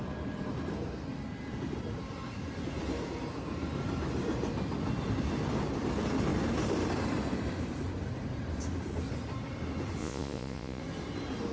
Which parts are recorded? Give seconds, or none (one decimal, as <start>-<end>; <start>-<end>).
0.0-10.0; 10.8-11.5